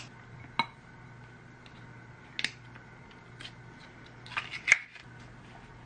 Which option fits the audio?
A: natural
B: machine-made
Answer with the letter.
A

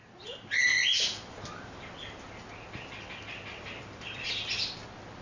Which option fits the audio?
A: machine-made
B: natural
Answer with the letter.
B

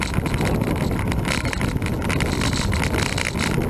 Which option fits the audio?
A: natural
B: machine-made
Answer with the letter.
A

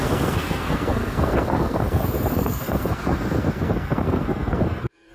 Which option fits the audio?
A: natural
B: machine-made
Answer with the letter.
B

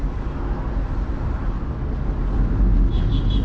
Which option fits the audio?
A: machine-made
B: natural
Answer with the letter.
B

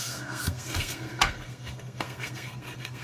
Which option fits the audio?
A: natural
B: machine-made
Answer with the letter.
B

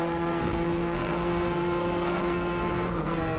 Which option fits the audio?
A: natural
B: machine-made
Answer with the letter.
B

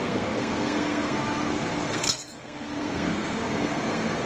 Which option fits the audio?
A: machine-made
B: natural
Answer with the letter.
A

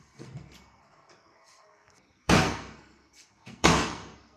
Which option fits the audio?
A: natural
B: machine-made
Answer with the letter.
B